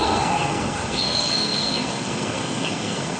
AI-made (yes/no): yes